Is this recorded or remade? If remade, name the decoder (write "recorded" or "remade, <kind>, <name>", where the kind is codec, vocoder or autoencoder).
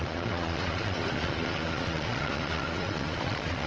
remade, vocoder, Vocos